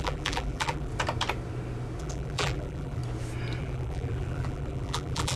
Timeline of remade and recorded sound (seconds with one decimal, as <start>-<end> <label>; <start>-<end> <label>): 0.0-0.9 remade; 0.9-2.0 recorded; 2.0-3.0 remade; 3.0-3.6 recorded; 3.6-5.4 remade

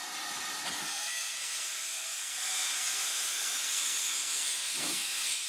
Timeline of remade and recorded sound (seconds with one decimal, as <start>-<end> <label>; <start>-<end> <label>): 0.0-0.7 recorded; 0.7-5.5 remade

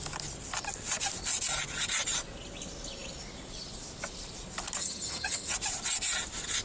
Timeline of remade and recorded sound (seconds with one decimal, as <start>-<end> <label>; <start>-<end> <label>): 0.0-4.8 recorded; 4.8-5.5 remade; 5.5-6.6 recorded

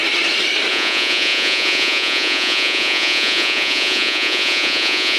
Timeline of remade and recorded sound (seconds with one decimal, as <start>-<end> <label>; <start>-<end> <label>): 0.0-0.7 recorded; 0.7-5.2 remade

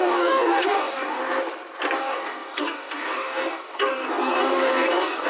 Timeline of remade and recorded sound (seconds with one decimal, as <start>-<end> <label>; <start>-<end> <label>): 0.0-1.2 remade; 1.2-2.0 recorded; 2.0-5.3 remade

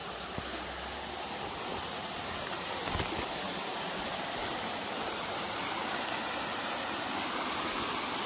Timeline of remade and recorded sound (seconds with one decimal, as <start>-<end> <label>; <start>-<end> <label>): 0.0-3.8 recorded; 3.8-8.3 remade

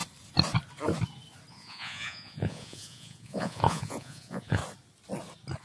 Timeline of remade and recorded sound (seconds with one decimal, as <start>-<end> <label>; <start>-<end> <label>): 0.0-1.5 recorded; 1.5-4.6 remade; 4.6-5.6 recorded